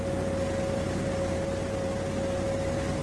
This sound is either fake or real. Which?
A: real